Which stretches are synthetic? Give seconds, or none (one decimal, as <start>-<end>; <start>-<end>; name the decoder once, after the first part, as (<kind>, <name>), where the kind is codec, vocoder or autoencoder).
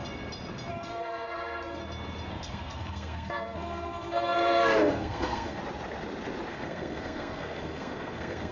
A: 0.7-1.8 (codec, SNAC); 2.3-5.6; 6.5-8.5